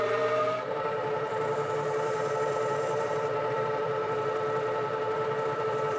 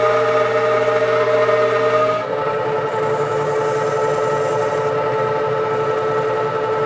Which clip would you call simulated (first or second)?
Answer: first